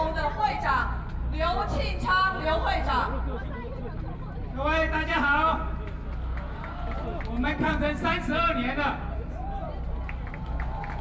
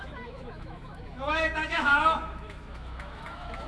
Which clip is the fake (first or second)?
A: second